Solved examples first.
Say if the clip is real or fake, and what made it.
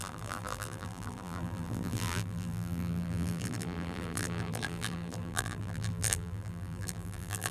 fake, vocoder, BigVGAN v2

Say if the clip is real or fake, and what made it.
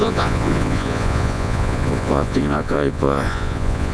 fake, vocoder, Vocos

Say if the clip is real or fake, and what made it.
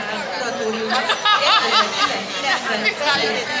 real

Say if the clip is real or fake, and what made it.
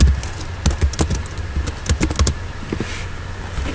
real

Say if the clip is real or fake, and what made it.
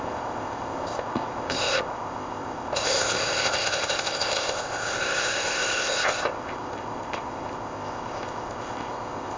fake, codec, ZipCodec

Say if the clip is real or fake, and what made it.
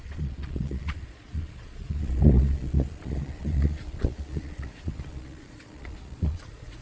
fake, vocoder, Vocos